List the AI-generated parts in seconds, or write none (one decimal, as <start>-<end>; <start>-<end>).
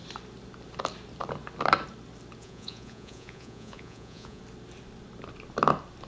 2.4-4.4